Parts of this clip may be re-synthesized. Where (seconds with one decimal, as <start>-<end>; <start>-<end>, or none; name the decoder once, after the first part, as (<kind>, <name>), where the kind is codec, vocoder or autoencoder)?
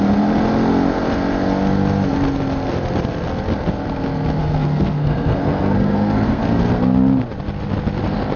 4.4-6.4 (codec, SNAC)